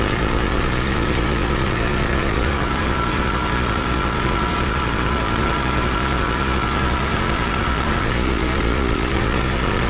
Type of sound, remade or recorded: remade